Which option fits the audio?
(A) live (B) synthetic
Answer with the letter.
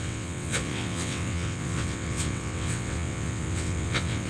B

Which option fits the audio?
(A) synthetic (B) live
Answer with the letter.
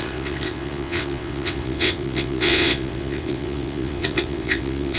A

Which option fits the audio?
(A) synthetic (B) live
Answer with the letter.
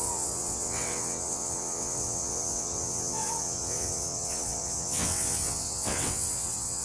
A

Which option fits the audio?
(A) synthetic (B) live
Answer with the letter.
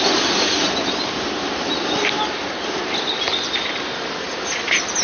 B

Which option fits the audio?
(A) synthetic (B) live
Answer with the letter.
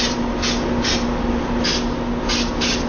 B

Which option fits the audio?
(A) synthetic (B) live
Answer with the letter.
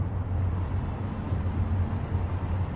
B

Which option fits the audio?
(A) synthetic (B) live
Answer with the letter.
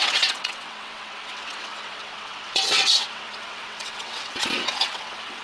A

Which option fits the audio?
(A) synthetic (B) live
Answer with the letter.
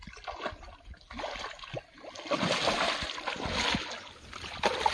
B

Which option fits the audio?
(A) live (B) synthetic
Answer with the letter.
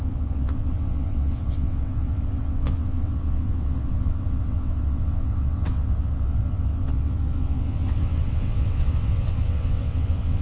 B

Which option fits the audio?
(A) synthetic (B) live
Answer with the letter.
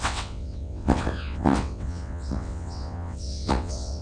A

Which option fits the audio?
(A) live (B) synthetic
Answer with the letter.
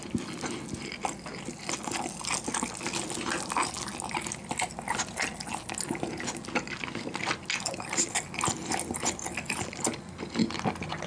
A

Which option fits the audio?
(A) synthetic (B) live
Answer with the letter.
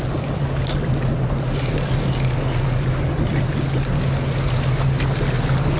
B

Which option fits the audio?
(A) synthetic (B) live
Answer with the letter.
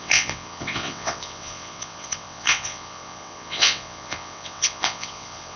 A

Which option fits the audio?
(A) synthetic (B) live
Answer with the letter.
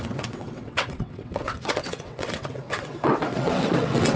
A